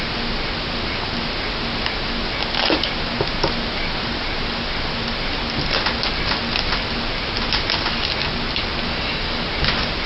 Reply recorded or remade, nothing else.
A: recorded